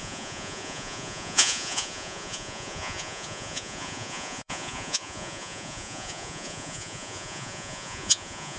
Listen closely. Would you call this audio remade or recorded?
remade